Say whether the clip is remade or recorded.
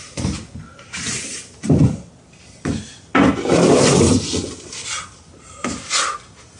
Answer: recorded